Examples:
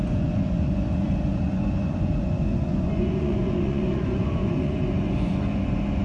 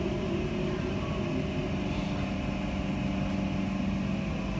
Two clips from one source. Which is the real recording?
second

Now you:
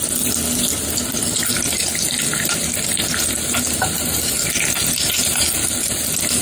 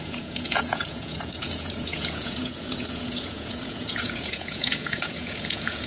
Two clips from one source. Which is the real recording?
first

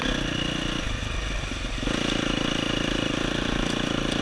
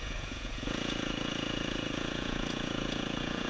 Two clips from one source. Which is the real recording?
first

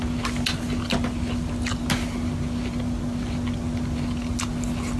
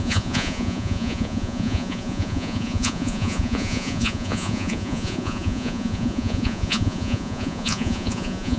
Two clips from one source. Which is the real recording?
first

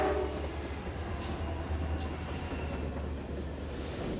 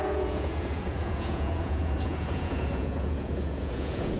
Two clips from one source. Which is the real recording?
first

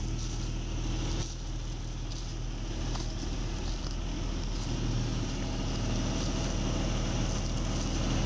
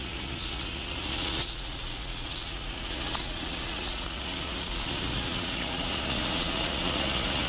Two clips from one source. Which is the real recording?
first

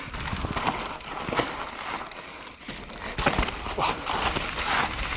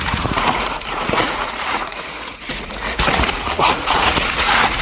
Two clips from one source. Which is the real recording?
first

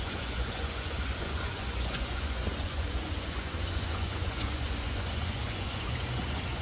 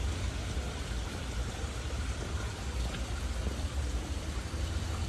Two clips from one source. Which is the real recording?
second